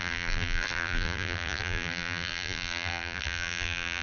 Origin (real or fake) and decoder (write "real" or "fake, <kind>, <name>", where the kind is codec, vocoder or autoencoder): fake, vocoder, BigVGAN v2